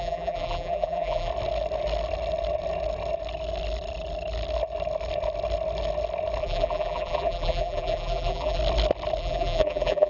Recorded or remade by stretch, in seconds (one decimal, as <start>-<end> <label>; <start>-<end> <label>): 0.0-1.3 remade; 1.3-6.4 recorded; 6.4-8.6 remade; 8.6-9.2 recorded; 9.2-10.1 remade